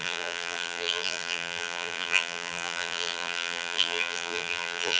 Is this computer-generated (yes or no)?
yes